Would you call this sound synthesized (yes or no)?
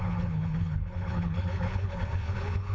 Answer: yes